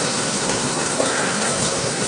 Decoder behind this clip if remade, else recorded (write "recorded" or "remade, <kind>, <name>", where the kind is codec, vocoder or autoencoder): remade, codec, SNAC